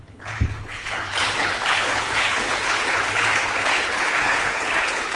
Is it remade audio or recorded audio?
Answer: remade